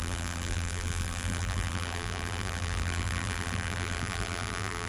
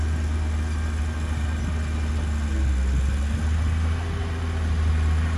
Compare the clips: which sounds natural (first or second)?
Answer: second